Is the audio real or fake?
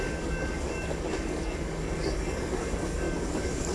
fake